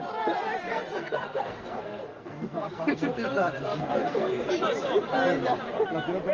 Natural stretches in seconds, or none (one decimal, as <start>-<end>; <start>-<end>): 0.0-0.7; 4.5-6.3